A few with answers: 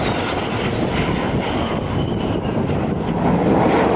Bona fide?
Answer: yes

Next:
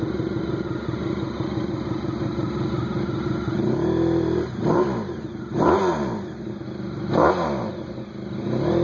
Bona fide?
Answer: yes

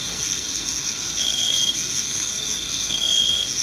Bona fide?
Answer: no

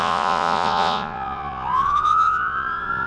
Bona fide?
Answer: no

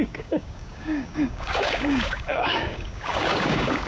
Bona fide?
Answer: no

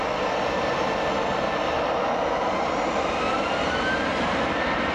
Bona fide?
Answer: yes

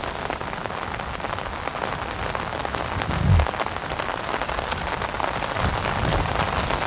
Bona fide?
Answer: yes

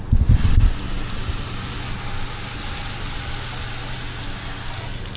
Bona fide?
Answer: yes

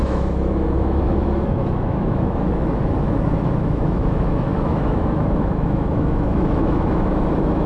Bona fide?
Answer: no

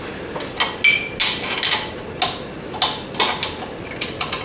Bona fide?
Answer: yes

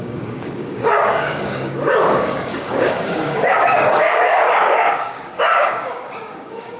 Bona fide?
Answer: no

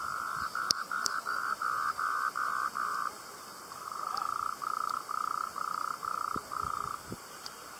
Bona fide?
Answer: no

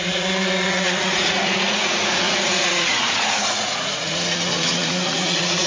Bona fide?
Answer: no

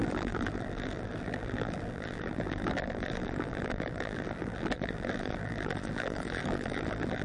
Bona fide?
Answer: no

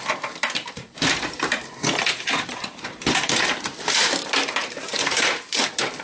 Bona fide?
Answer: no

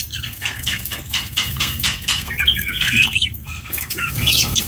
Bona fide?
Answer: no